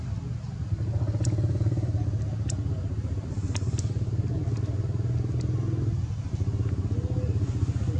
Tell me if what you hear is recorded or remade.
recorded